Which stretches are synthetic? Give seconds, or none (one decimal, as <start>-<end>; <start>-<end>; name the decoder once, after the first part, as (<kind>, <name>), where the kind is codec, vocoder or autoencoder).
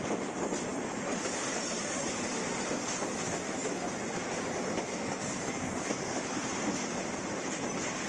4.9-6.0 (codec, SNAC)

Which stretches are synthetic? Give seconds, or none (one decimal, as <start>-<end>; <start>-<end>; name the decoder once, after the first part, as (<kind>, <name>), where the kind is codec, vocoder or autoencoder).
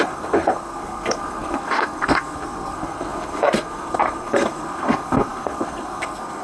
0.0-6.4 (codec, SNAC)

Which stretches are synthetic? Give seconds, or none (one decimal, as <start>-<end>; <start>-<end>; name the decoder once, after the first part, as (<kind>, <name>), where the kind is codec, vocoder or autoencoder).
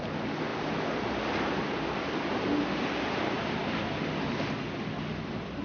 none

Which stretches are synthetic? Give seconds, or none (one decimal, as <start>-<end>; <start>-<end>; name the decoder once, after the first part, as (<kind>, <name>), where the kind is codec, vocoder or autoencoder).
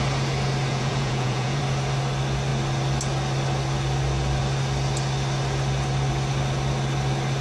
0.7-1.6 (vocoder, Vocos)